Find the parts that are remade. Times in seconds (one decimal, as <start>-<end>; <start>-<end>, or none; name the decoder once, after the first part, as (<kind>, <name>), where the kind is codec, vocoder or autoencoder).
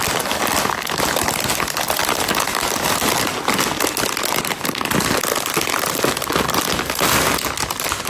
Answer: none